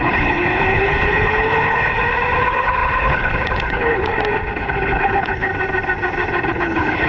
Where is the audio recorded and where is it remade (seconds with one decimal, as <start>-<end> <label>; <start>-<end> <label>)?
0.0-1.9 remade; 1.9-2.4 recorded; 2.4-4.1 remade; 4.1-4.6 recorded; 4.6-5.5 remade; 5.5-6.5 recorded; 6.5-7.1 remade